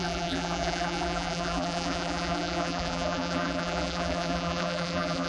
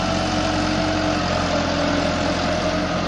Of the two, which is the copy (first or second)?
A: first